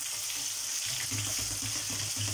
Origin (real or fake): real